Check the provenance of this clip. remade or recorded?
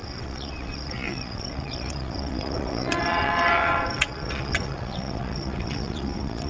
remade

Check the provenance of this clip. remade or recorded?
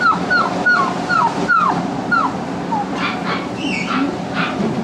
recorded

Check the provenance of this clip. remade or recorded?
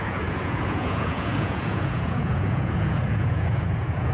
remade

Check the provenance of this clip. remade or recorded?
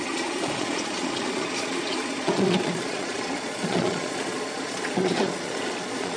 remade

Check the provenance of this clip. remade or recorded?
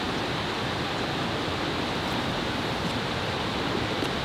recorded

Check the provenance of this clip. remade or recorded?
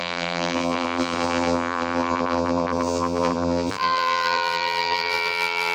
remade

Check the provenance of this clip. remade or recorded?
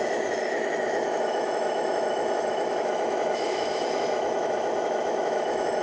remade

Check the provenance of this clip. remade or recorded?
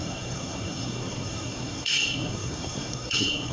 remade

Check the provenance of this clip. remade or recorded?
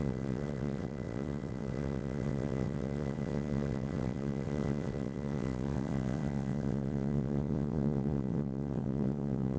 remade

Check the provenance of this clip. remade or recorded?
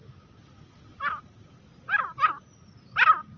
recorded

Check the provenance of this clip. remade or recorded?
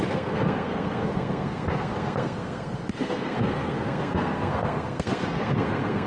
remade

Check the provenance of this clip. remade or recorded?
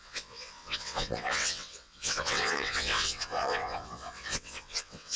remade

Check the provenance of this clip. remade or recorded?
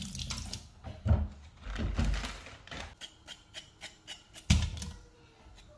recorded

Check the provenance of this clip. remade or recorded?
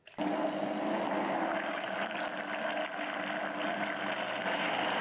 recorded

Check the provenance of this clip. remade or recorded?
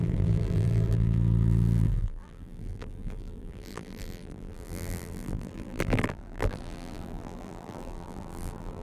remade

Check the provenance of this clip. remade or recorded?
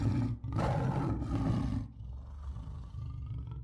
recorded